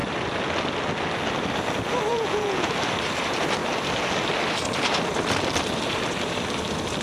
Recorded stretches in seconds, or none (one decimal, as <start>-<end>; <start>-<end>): 0.0-2.1; 2.7-7.0